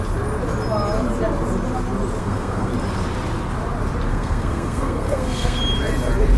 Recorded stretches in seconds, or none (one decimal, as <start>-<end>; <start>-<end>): 0.0-2.2; 2.7-4.1; 5.6-6.4